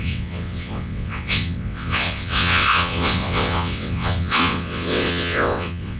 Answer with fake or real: fake